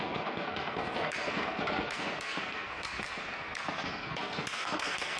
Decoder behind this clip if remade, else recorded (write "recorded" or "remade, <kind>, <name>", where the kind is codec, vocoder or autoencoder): remade, codec, SNAC